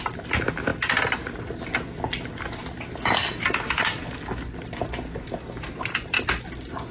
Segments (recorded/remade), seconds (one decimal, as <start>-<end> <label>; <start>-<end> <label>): 0.0-6.9 recorded